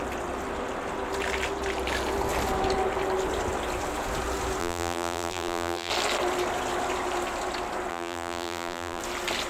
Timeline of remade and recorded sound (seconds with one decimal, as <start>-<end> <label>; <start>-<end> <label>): 0.0-4.6 recorded; 4.6-5.9 remade; 5.9-7.9 recorded; 7.9-9.0 remade; 9.0-9.5 recorded